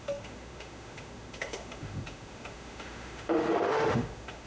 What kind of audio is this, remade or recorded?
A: remade